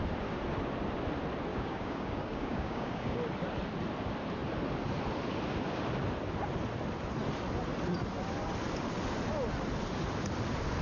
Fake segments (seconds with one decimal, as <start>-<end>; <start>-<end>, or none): 1.5-3.2